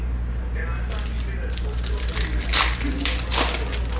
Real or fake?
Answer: real